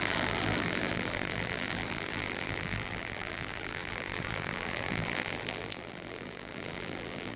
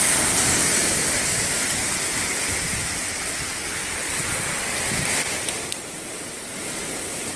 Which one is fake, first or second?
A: first